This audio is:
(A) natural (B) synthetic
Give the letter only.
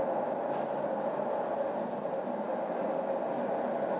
A